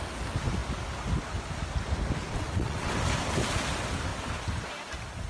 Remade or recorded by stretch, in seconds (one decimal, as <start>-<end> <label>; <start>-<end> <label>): 0.0-2.3 recorded; 2.3-2.9 remade; 2.9-5.3 recorded